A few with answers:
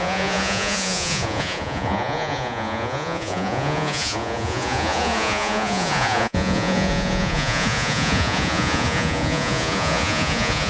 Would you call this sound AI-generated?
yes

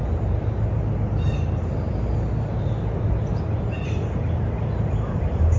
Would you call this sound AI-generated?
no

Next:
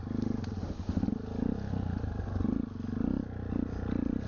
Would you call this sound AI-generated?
no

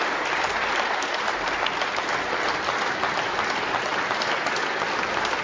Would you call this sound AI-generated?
no